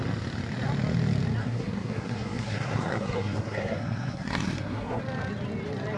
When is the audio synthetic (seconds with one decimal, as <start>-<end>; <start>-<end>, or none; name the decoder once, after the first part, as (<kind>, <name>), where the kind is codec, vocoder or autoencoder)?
1.4-5.0 (codec, SNAC)